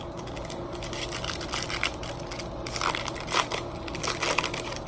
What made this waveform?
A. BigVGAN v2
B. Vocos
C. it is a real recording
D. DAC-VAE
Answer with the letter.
C